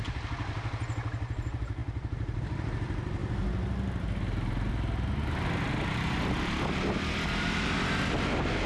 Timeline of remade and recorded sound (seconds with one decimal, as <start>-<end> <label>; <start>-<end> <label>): 0.0-8.7 recorded